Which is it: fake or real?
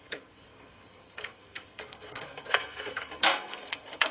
fake